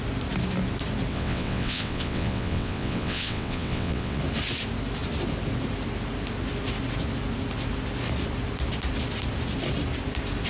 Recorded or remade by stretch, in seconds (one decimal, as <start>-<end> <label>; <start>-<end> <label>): 0.0-1.1 recorded; 1.1-4.2 remade; 4.2-10.5 recorded